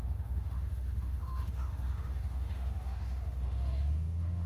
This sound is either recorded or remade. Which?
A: remade